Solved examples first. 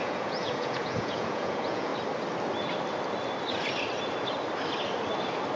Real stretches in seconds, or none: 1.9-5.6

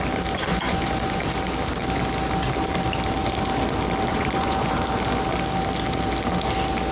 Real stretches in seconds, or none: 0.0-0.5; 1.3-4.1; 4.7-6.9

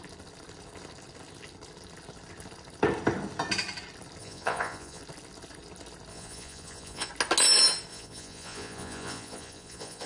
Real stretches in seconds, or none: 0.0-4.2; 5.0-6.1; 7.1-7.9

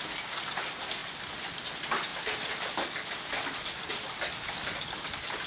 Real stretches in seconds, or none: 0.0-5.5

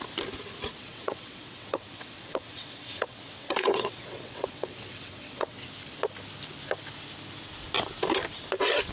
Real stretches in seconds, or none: 0.0-0.8; 5.7-8.9